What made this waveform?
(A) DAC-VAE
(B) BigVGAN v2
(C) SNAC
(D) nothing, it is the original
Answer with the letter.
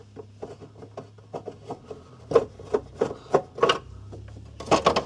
D